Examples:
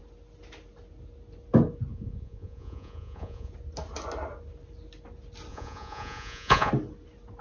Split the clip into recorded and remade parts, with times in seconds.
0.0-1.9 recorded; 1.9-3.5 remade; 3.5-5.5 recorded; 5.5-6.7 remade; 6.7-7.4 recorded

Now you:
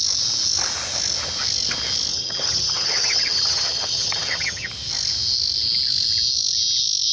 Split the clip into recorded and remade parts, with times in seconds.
0.0-2.1 recorded; 2.1-4.7 remade; 4.7-7.1 recorded

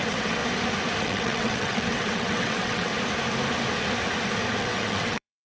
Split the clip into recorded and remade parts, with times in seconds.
0.0-0.4 remade; 0.4-1.0 recorded; 1.0-2.9 remade; 2.9-4.6 recorded; 4.6-5.4 remade

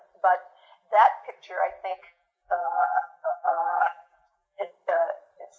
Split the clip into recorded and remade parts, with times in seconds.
0.0-1.9 recorded; 1.9-4.7 remade; 4.7-5.6 recorded

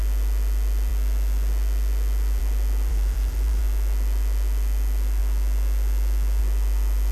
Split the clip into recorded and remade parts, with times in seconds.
0.0-2.9 recorded; 2.9-3.6 remade; 3.6-7.1 recorded